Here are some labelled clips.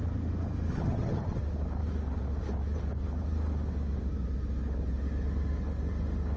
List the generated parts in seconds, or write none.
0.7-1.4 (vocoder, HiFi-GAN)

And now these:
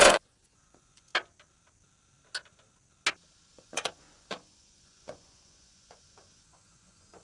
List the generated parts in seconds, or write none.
0.0-1.1 (vocoder, Vocos); 3.5-7.2

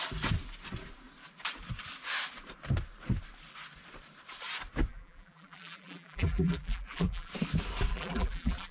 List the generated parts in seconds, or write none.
4.9-7.3 (vocoder, BigVGAN v2); 7.9-8.7

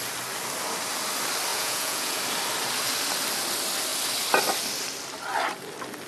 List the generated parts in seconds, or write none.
1.5-2.2 (vocoder, Vocos)

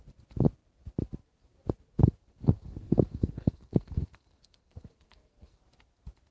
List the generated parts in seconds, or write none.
1.9-5.6 (codec, SNAC)